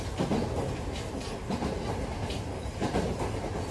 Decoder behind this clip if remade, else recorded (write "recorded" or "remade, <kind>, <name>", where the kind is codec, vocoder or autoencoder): recorded